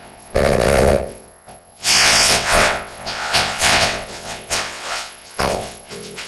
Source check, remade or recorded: remade